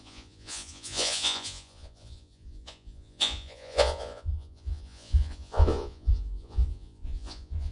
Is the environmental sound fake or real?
fake